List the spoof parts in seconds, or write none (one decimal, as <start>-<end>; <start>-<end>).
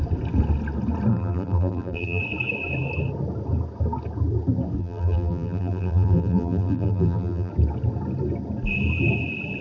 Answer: 1.1-2.2; 4.8-7.5